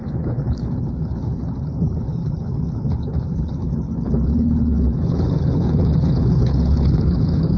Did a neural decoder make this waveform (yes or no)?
yes